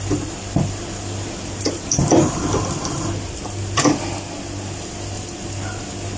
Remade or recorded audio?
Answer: remade